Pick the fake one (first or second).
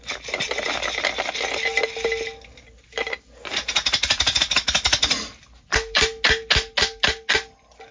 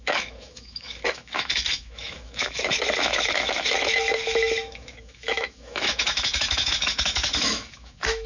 second